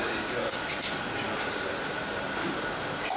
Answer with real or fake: real